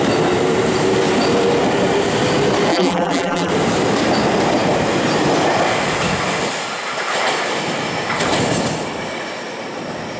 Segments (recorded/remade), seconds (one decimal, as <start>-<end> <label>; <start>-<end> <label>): 0.0-2.7 recorded; 2.7-3.5 remade; 3.5-10.2 recorded